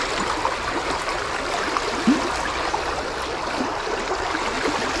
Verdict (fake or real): real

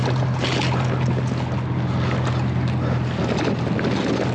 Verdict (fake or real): real